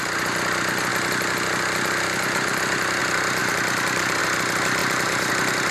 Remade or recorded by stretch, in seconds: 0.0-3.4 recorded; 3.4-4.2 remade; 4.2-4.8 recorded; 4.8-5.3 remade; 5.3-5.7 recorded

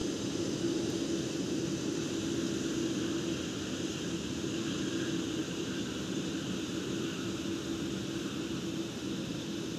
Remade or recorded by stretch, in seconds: 0.0-5.4 recorded; 5.4-6.9 remade; 6.9-9.8 recorded

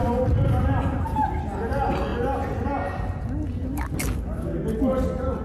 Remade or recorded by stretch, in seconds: 0.0-5.4 recorded

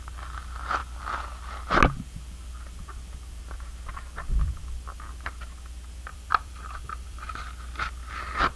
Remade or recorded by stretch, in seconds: 0.0-6.1 recorded; 6.1-7.3 remade; 7.3-8.6 recorded

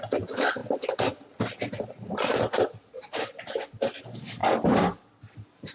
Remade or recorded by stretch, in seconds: 0.0-0.6 remade; 0.6-4.0 recorded; 4.0-4.4 remade; 4.4-5.3 recorded; 5.3-5.7 remade